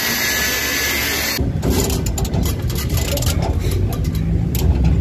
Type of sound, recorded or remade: recorded